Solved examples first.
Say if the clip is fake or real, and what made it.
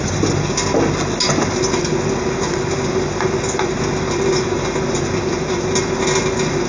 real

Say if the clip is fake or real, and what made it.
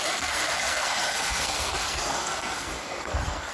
fake, codec, SNAC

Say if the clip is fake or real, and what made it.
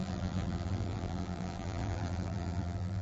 fake, vocoder, BigVGAN v2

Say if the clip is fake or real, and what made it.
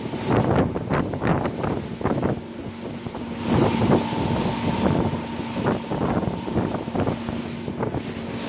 real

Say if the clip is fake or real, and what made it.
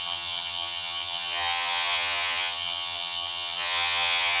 fake, vocoder, HiFi-GAN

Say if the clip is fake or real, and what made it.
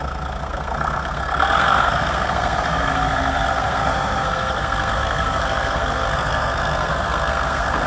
fake, codec, SNAC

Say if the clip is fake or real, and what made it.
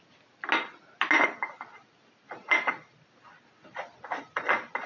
real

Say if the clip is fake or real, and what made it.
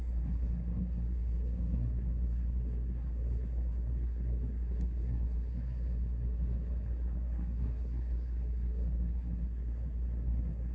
fake, codec, SNAC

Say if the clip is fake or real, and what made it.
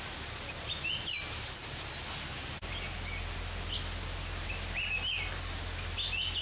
real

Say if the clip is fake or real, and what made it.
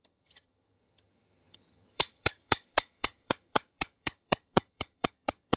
fake, vocoder, HiFi-GAN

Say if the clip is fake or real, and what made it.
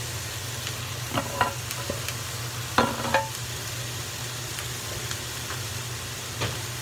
real